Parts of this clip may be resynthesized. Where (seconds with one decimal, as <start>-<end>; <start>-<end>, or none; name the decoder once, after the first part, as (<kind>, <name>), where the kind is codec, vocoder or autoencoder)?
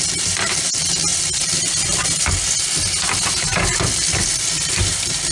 1.1-1.7 (vocoder, BigVGAN v2)